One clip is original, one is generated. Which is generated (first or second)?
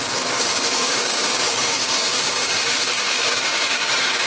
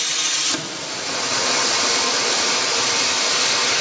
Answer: first